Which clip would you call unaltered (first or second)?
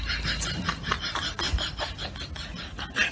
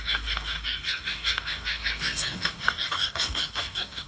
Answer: first